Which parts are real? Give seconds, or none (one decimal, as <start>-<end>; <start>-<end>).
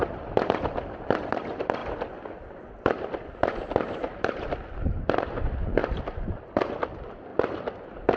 0.0-5.8; 6.7-8.2